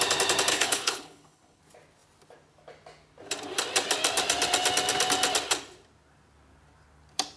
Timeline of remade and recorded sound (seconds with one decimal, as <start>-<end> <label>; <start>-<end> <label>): 0.0-0.5 recorded; 0.5-1.6 remade; 1.6-7.4 recorded